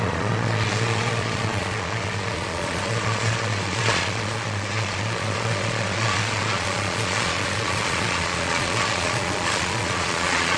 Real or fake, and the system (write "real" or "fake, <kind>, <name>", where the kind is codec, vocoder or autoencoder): fake, vocoder, Vocos